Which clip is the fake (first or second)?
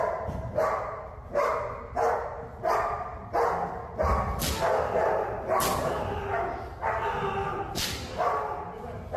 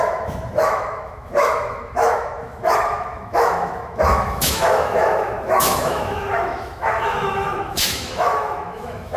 second